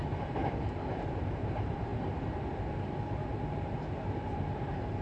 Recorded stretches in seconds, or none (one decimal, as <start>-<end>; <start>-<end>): 0.4-1.2; 1.9-3.1

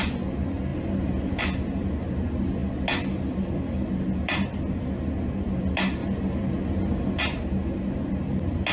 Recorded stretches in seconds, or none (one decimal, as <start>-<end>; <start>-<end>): 0.0-8.7

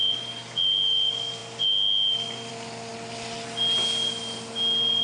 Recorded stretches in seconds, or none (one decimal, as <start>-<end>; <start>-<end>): 0.0-5.0

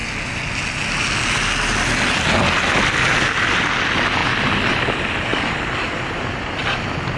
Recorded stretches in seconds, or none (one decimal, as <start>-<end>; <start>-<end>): 0.0-3.0; 5.3-6.0

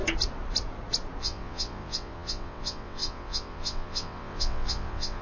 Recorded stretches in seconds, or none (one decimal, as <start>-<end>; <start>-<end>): 0.0-1.2

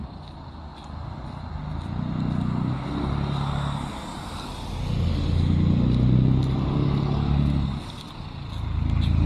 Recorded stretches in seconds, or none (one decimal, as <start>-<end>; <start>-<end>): 0.0-9.3

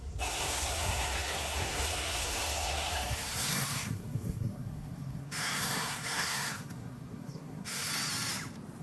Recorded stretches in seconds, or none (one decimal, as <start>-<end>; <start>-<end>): 7.9-8.8